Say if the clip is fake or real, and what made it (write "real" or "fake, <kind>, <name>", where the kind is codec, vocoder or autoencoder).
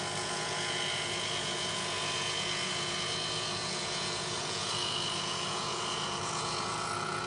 fake, vocoder, Vocos